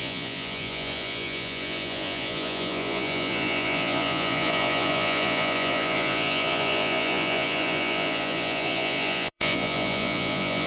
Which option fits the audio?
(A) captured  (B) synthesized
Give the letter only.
B